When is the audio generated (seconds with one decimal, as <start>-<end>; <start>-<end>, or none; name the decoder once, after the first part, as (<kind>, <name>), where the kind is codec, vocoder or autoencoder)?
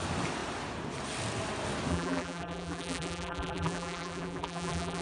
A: 1.9-5.0 (vocoder, BigVGAN v2)